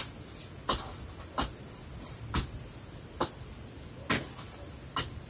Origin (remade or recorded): recorded